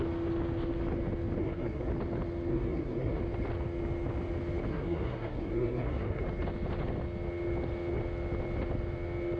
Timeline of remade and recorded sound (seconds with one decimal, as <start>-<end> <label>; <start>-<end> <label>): 0.0-1.4 recorded; 1.4-1.9 remade; 1.9-2.5 recorded; 2.5-3.2 remade; 3.2-4.7 recorded; 4.7-6.2 remade; 6.2-9.4 recorded